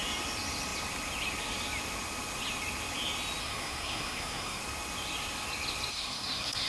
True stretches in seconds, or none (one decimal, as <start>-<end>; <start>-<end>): 0.0-3.4; 4.6-5.9